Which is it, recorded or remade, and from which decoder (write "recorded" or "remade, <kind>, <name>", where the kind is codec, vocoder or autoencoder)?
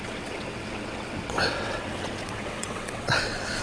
remade, vocoder, WaveNeXt